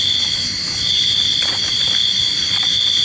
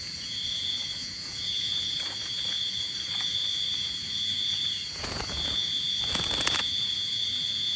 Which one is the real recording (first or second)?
first